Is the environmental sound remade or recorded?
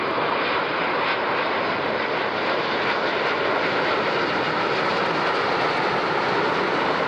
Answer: recorded